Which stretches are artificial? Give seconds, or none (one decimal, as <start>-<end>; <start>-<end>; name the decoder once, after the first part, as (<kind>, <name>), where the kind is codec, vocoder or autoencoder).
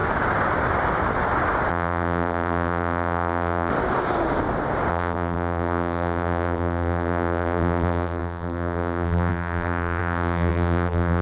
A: 1.7-3.7 (vocoder, BigVGAN v2); 4.9-11.2